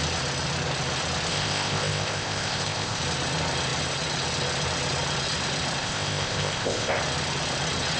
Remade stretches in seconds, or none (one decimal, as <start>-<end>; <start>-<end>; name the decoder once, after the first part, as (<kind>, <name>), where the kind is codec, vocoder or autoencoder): 1.3-3.0 (codec, ZipCodec); 5.8-7.0